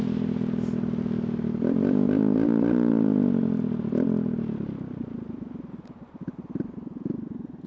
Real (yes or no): yes